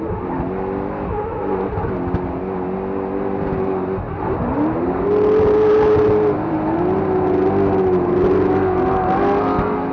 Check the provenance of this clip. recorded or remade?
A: recorded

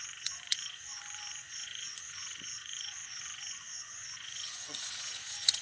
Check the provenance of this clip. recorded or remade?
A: remade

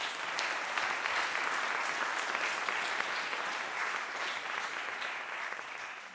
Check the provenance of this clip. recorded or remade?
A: recorded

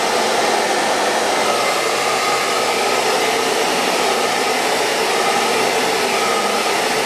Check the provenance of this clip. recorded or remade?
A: recorded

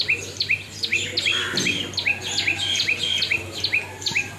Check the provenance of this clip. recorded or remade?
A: recorded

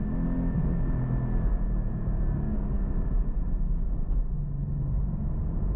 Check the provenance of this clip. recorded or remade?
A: recorded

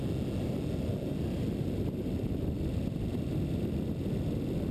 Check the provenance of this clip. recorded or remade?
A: recorded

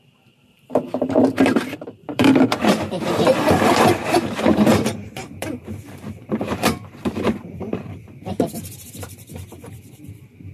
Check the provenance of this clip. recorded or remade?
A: remade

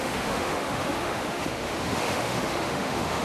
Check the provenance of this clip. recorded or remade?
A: remade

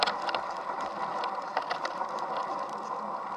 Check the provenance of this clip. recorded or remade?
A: recorded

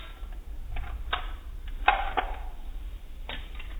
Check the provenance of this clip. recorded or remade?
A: recorded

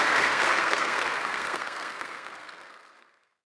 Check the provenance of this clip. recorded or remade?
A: remade